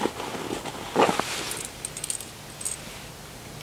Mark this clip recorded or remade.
recorded